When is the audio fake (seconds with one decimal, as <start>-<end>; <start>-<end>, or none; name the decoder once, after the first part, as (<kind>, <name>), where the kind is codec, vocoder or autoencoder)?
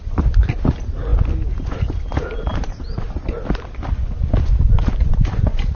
2.5-3.2 (vocoder, BigVGAN v2)